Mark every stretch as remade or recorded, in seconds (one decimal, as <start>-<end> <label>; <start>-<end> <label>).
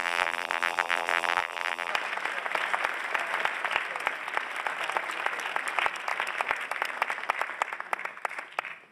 0.0-1.9 remade; 1.9-8.9 recorded